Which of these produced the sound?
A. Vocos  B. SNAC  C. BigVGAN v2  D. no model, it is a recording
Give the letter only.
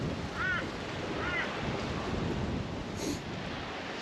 D